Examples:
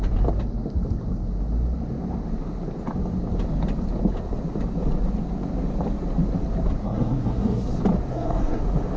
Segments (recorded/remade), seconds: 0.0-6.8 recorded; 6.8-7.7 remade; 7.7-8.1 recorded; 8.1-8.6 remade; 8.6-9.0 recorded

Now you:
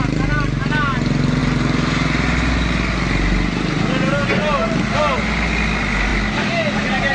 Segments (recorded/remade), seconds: 0.0-7.1 recorded